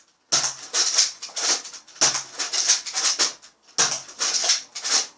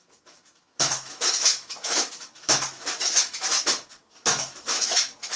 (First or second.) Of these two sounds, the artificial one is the second